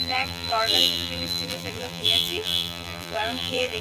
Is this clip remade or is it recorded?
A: remade